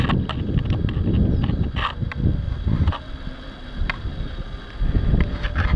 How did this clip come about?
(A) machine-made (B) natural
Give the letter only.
B